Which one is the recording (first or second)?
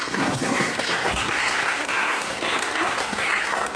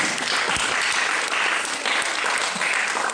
second